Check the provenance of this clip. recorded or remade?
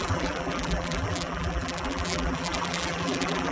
remade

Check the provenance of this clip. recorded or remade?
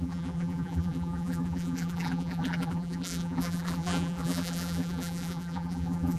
remade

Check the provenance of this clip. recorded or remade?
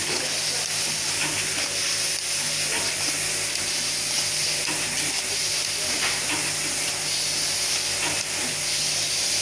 recorded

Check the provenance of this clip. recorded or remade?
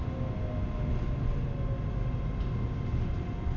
recorded